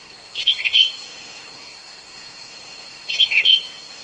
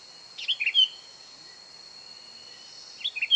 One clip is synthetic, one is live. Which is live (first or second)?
second